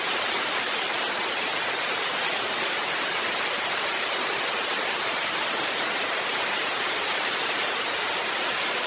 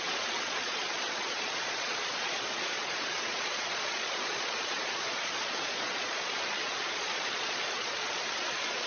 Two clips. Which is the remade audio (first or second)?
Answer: second